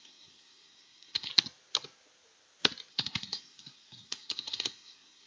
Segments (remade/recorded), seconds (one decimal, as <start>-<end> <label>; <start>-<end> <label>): 0.0-1.3 remade; 1.3-2.9 recorded; 2.9-5.3 remade